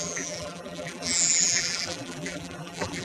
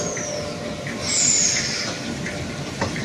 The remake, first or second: first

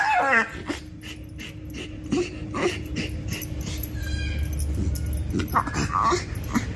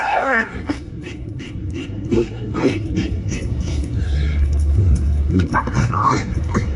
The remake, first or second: second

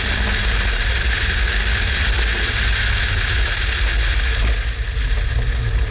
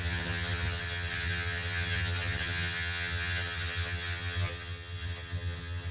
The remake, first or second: second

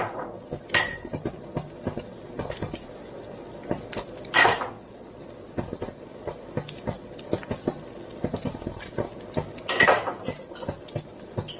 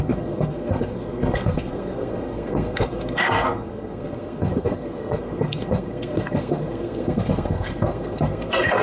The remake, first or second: second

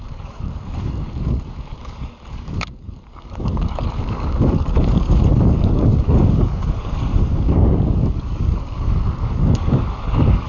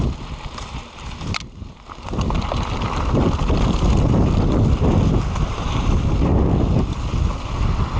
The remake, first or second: first